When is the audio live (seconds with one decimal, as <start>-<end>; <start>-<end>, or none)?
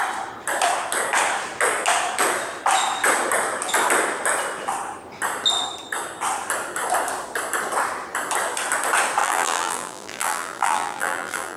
0.0-9.2